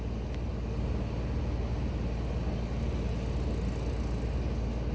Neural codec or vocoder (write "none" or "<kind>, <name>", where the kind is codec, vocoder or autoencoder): none